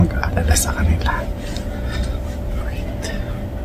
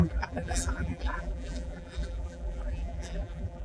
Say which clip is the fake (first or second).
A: second